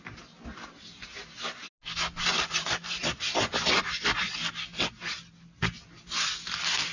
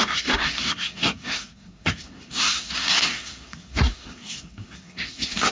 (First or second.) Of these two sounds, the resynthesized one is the second